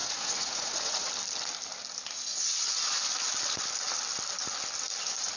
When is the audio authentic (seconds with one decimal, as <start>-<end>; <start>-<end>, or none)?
1.1-5.4

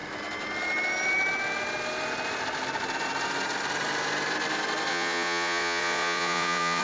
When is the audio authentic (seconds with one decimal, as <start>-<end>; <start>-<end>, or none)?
0.0-4.9

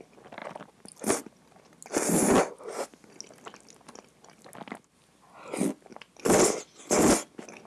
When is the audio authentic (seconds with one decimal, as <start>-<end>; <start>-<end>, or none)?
0.0-7.7

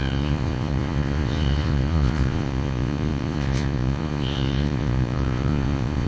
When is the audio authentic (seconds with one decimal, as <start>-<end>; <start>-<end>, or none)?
none

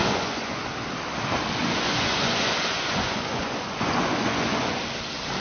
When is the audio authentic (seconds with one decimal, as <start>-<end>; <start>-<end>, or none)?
0.6-1.6; 4.8-5.4

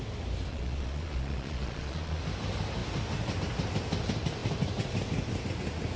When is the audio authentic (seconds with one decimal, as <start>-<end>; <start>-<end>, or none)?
0.0-0.5; 2.2-6.0